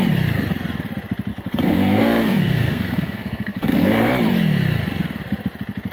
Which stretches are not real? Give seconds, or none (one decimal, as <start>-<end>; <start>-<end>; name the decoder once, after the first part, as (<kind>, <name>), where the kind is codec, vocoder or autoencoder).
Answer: 1.3-4.1 (codec, SNAC)